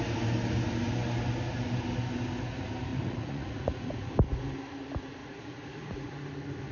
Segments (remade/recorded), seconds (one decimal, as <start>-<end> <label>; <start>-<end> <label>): 0.0-2.9 recorded; 2.9-4.1 remade; 4.1-5.2 recorded; 5.2-6.1 remade; 6.1-6.7 recorded